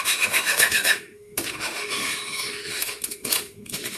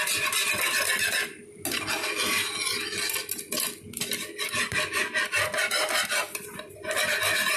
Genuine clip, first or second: second